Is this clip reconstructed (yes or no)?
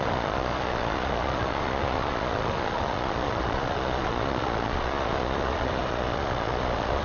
yes